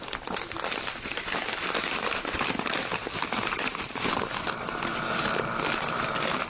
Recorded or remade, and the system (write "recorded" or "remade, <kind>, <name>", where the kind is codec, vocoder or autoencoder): recorded